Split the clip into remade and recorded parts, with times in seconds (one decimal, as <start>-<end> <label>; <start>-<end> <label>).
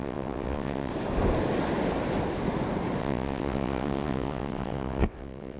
0.0-0.9 remade; 0.9-3.0 recorded; 3.0-5.6 remade